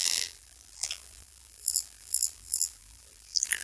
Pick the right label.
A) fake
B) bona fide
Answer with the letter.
A